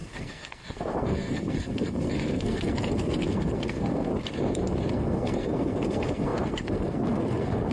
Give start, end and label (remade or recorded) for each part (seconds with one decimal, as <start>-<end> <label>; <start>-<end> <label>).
0.0-4.1 remade; 4.1-4.9 recorded; 4.9-7.7 remade